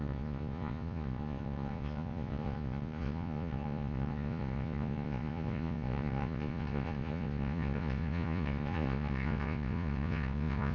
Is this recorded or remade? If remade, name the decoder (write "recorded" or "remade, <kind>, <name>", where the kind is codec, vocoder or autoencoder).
remade, vocoder, Vocos